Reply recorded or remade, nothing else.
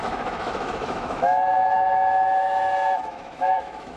remade